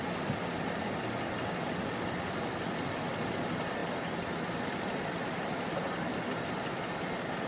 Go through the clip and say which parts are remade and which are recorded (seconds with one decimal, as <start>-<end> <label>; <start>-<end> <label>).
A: 0.0-7.5 recorded